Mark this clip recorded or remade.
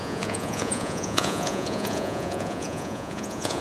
remade